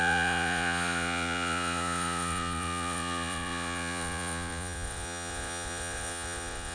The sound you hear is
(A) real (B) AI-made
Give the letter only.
B